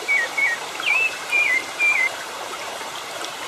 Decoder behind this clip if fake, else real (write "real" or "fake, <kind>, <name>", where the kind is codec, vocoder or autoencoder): fake, vocoder, BigVGAN v2